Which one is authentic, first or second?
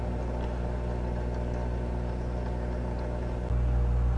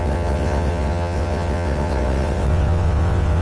first